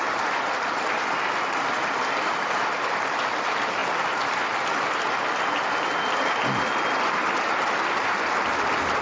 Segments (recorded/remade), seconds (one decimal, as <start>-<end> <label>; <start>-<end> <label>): 0.0-9.0 recorded